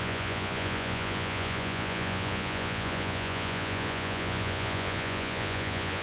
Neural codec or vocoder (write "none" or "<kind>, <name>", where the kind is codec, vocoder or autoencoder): vocoder, Vocos